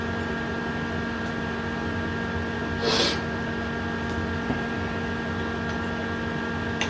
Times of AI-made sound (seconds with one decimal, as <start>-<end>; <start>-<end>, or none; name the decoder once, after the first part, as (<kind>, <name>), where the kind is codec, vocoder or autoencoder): none